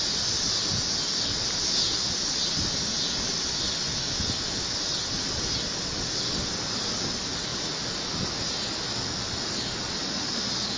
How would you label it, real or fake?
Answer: real